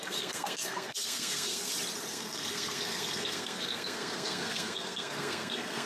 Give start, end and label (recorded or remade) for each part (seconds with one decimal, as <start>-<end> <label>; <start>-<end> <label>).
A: 0.0-1.7 remade; 1.7-2.1 recorded; 2.1-5.9 remade